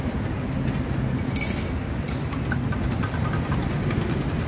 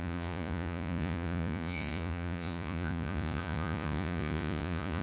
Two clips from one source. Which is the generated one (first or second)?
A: second